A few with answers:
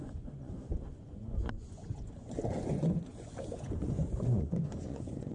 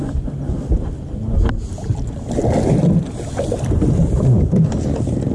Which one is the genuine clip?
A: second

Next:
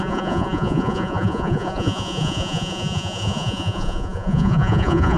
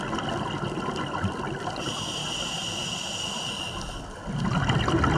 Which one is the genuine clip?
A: second